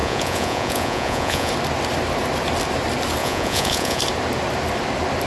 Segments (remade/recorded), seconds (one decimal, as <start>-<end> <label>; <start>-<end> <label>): 0.0-1.5 remade; 1.5-3.2 recorded; 3.2-4.0 remade; 4.0-5.3 recorded